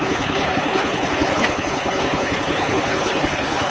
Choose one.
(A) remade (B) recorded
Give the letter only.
A